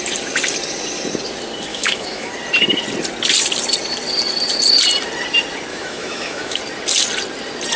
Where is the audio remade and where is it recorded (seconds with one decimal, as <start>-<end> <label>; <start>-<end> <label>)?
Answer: 0.0-1.7 recorded; 1.7-2.3 remade; 2.3-5.7 recorded; 5.7-6.6 remade; 6.6-7.8 recorded